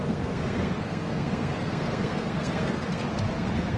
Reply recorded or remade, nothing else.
remade